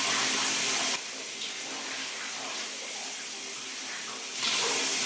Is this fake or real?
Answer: real